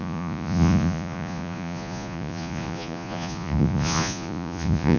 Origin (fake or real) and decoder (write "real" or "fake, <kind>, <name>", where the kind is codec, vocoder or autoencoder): fake, vocoder, Vocos